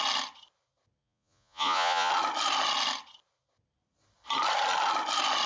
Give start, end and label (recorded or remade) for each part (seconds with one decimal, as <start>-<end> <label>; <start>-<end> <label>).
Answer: 0.0-1.0 recorded; 1.0-2.1 remade; 2.1-5.5 recorded